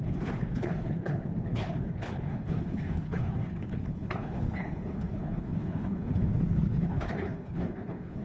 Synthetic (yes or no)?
yes